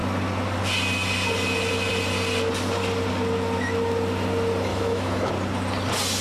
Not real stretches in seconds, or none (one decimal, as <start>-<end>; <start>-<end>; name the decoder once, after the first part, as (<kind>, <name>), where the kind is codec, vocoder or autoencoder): 4.7-5.3 (autoencoder, DAC-VAE)